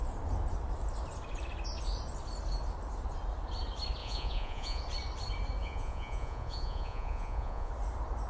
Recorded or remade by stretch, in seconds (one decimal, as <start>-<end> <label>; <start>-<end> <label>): 0.0-4.0 recorded; 4.0-4.8 remade; 4.8-5.6 recorded; 5.6-7.7 remade; 7.7-8.3 recorded